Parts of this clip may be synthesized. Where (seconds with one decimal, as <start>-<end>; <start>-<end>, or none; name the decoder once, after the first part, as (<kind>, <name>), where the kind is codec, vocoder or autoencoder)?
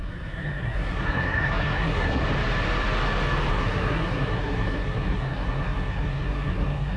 0.0-2.2 (codec, SNAC); 3.5-7.0